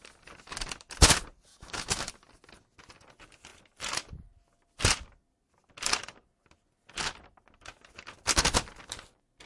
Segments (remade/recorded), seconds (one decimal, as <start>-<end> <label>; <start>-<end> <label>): 0.0-1.5 recorded; 1.5-2.1 remade; 2.1-9.5 recorded